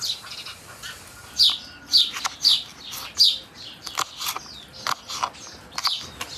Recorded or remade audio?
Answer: recorded